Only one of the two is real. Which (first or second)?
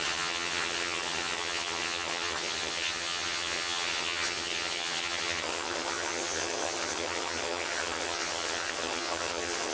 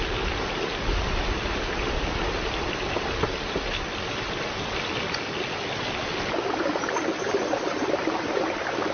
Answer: second